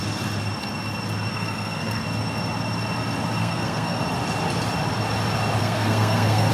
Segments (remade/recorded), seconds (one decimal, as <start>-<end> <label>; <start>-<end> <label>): 0.0-1.3 recorded; 1.3-2.0 remade; 2.0-3.4 recorded; 3.4-4.0 remade; 4.0-5.6 recorded; 5.6-6.5 remade

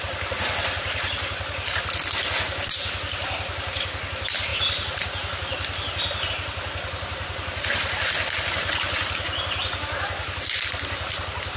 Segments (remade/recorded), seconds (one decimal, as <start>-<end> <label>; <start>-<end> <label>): 0.0-11.6 recorded

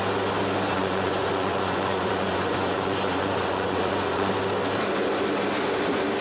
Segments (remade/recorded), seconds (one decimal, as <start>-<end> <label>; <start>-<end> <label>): 0.0-0.7 recorded; 0.7-4.3 remade; 4.3-6.2 recorded

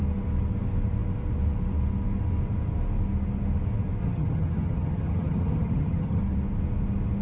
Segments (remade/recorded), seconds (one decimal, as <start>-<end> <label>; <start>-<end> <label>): 0.0-4.0 recorded; 4.0-6.2 remade; 6.2-7.2 recorded

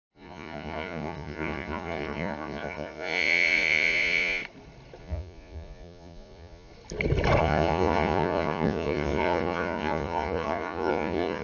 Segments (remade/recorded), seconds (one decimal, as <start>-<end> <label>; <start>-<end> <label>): 0.0-4.4 remade; 4.4-5.0 recorded; 5.0-6.7 remade; 6.7-7.4 recorded; 7.4-11.4 remade